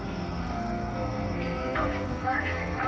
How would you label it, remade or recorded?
remade